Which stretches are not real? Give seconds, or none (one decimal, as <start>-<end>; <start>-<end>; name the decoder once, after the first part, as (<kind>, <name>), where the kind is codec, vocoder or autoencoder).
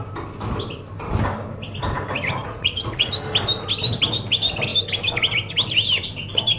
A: 2.4-3.1 (vocoder, Vocos)